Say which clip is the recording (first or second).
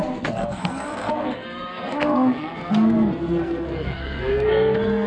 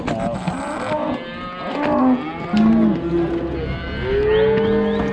second